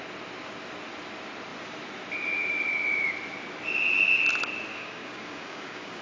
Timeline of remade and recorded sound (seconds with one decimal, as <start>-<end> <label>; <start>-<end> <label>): 0.0-4.7 recorded; 4.7-6.0 remade